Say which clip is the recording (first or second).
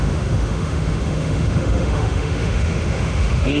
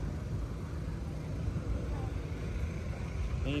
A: second